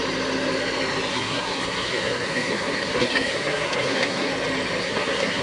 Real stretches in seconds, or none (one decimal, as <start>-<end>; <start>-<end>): 0.0-1.1; 4.3-4.8